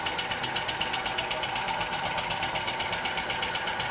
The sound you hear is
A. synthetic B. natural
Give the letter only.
B